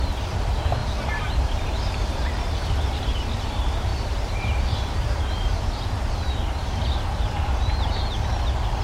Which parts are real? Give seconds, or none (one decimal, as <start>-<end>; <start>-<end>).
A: 0.0-0.8; 3.2-3.9; 8.0-8.8